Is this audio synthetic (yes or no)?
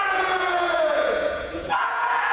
yes